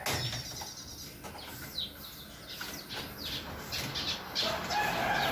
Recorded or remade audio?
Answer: recorded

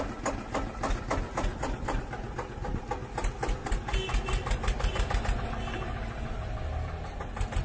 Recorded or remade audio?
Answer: recorded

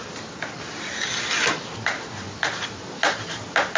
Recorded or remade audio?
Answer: recorded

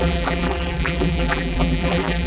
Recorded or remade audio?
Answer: remade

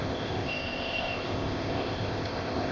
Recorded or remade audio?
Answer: remade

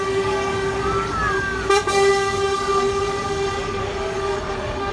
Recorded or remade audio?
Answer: remade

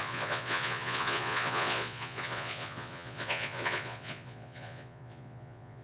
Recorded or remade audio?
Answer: remade